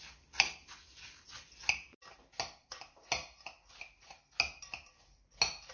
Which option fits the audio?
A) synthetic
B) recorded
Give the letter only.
B